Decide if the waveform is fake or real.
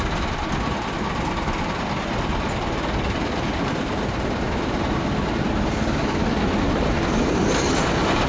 real